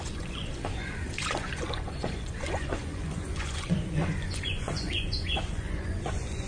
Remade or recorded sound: remade